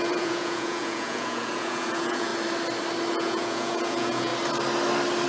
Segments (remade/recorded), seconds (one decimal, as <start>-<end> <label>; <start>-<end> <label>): 0.0-2.3 remade; 2.3-3.1 recorded; 3.1-4.3 remade; 4.3-5.3 recorded